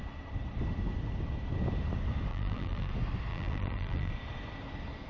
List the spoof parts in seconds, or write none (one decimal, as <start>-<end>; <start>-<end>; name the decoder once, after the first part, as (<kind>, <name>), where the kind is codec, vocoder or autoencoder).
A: 2.3-2.9 (vocoder, BigVGAN v2); 3.3-4.1